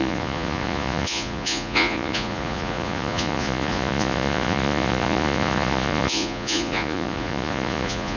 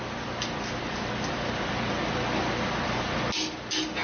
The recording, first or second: second